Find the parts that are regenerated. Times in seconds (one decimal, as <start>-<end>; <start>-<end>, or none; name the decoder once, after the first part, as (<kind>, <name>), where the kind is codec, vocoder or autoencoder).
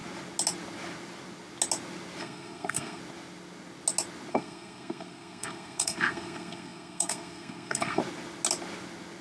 2.2-3.0 (codec, SNAC); 4.3-8.0